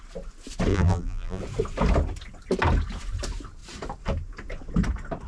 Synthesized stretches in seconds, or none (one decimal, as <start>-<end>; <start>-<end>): 0.7-1.4